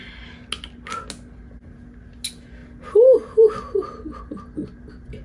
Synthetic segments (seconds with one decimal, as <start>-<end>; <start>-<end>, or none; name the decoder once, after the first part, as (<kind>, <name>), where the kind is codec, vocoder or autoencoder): none